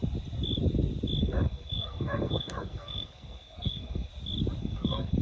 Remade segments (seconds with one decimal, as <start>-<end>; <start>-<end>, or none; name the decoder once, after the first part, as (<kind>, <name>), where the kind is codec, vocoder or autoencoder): 1.2-4.1 (codec, SNAC); 4.6-5.2

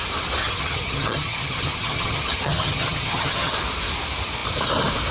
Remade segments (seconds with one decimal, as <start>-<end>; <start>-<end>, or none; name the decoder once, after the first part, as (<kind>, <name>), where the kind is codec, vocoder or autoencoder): 0.4-3.5 (vocoder, HiFi-GAN)

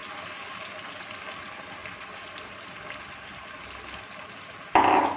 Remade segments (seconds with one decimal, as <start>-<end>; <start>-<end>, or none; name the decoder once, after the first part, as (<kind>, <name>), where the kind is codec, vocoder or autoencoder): none

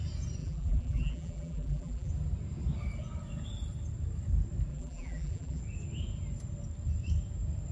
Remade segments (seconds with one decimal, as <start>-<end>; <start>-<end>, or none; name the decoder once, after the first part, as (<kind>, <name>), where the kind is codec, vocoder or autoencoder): 0.4-2.1 (vocoder, BigVGAN v2); 4.7-5.6

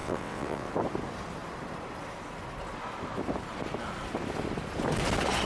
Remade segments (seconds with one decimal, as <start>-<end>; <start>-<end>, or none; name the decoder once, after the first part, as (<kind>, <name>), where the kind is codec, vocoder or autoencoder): 0.0-0.7 (vocoder, WaveNeXt)

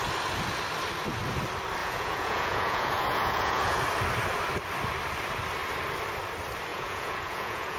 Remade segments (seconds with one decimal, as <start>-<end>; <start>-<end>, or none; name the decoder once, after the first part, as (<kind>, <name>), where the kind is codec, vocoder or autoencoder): 1.8-3.8 (vocoder, Vocos); 6.7-7.8

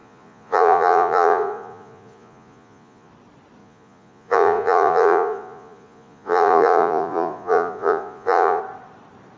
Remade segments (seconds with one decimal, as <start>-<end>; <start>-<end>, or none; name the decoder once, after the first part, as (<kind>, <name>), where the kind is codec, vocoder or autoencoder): 0.0-3.1 (vocoder, Vocos); 3.6-8.6